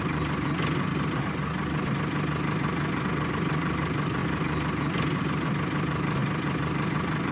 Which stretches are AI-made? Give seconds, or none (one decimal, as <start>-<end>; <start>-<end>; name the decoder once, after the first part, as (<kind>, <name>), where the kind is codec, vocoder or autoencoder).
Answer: 0.0-0.9 (vocoder, BigVGAN v2); 3.3-7.3